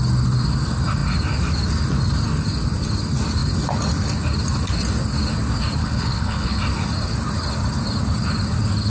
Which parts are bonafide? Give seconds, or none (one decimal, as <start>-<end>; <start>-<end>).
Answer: 0.0-5.8; 6.6-8.9